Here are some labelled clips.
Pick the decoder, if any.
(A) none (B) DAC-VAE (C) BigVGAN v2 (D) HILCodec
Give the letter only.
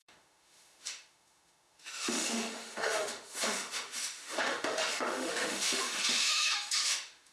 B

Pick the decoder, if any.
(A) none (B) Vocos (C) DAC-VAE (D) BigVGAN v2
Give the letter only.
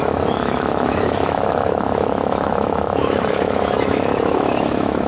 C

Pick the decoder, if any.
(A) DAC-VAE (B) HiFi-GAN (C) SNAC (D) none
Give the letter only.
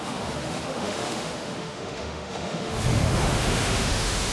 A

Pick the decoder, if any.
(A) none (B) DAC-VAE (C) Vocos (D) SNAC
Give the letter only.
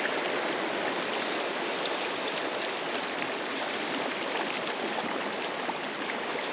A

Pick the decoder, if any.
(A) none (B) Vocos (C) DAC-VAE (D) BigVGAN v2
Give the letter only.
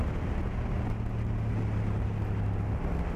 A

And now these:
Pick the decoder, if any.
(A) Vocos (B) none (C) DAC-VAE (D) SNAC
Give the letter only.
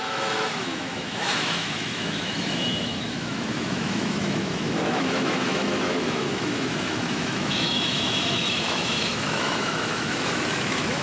C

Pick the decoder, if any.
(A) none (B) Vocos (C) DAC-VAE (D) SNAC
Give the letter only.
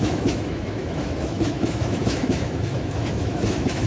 C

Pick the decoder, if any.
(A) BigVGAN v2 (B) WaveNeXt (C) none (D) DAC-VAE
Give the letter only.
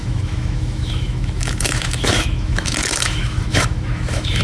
D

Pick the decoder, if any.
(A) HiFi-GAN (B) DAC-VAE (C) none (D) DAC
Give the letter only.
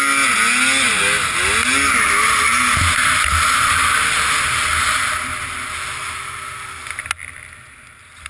C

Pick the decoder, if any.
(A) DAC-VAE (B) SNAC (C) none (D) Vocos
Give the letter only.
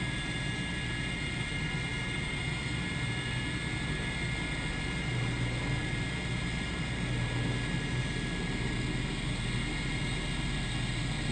C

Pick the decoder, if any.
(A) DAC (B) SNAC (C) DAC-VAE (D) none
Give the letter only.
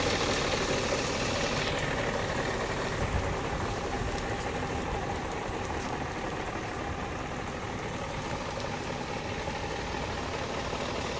D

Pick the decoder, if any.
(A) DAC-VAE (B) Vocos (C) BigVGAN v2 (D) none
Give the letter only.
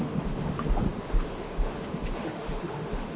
A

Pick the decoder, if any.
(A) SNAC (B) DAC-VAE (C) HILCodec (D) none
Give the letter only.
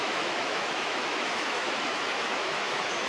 B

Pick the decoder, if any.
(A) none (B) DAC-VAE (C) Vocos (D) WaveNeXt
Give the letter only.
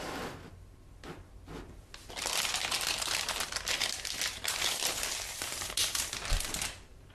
A